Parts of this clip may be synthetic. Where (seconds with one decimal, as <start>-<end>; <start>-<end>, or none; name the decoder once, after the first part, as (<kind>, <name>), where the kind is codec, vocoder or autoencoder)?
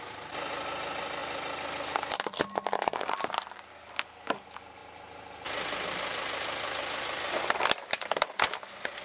none